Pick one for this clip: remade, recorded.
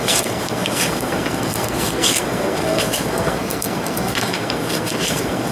remade